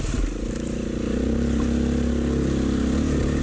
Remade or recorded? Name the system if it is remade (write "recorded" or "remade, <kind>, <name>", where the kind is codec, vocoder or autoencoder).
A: recorded